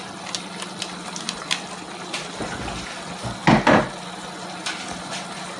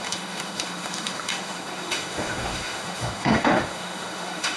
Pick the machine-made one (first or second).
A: second